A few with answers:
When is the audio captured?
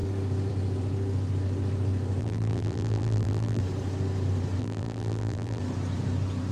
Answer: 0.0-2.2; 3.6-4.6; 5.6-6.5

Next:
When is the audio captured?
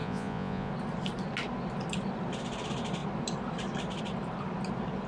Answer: 0.7-5.1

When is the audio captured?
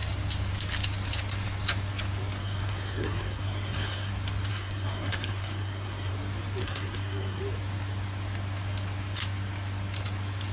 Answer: 0.0-2.4; 4.1-4.5; 6.1-6.6; 7.4-10.5